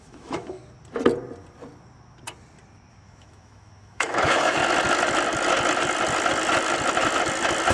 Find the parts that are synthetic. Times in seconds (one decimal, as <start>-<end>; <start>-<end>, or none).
0.0-0.6; 2.9-4.6